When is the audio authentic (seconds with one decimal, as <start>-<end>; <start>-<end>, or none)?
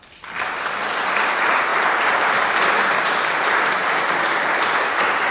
0.0-1.7